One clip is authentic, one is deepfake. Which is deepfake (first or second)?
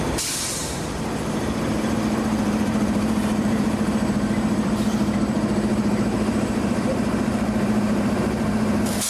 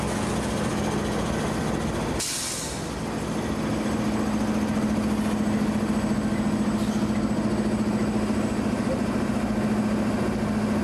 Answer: first